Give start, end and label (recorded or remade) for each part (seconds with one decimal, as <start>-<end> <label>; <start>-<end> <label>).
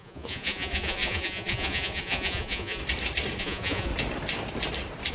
0.0-2.8 remade; 2.8-3.4 recorded; 3.4-3.9 remade; 3.9-5.1 recorded